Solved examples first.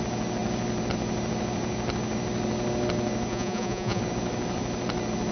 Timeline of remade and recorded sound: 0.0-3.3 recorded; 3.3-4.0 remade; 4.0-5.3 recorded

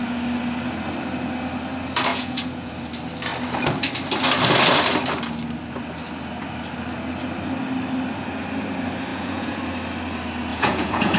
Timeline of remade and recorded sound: 0.0-2.1 recorded; 2.1-2.7 remade; 2.7-9.1 recorded; 9.1-9.6 remade; 9.6-10.5 recorded; 10.5-11.2 remade

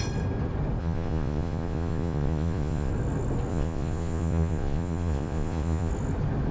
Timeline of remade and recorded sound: 0.0-0.8 recorded; 0.8-2.9 remade; 2.9-3.5 recorded; 3.5-5.9 remade; 5.9-6.5 recorded

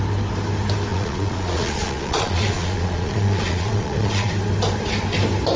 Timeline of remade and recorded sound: 0.0-0.9 recorded; 0.9-4.3 remade; 4.3-5.6 recorded

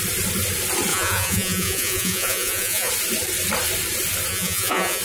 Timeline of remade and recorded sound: 0.0-0.9 recorded; 0.9-2.9 remade; 2.9-4.3 recorded; 4.3-5.0 remade

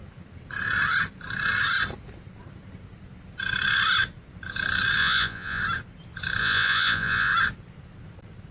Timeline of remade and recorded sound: 0.0-5.0 recorded; 5.0-5.6 remade; 5.6-6.4 recorded; 6.4-7.3 remade; 7.3-8.5 recorded

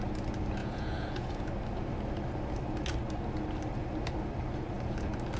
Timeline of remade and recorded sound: 0.0-0.6 recorded; 0.6-1.5 remade; 1.5-5.4 recorded